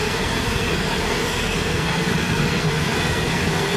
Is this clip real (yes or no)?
no